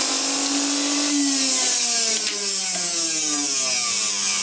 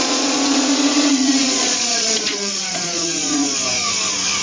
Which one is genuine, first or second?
first